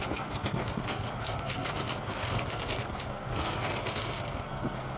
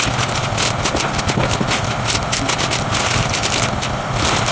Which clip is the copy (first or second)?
first